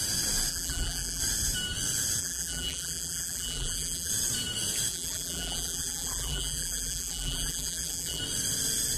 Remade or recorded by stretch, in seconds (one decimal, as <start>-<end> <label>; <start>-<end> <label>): 0.0-0.5 recorded; 0.5-1.2 remade; 1.2-2.2 recorded; 2.2-4.1 remade; 4.1-4.9 recorded; 4.9-8.2 remade; 8.2-9.0 recorded